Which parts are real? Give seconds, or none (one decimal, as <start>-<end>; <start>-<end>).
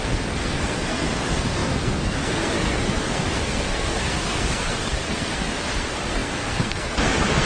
none